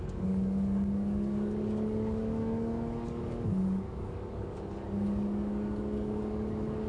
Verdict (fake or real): fake